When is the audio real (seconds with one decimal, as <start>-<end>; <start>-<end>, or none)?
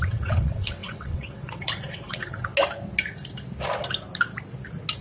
2.5-5.0